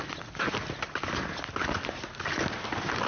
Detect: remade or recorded recorded